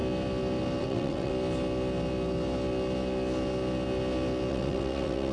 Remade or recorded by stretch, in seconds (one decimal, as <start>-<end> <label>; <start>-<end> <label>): 0.0-0.8 recorded; 0.8-1.3 remade; 1.3-4.5 recorded; 4.5-5.3 remade